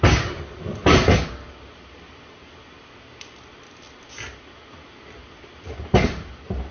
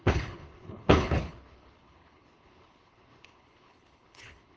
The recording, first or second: first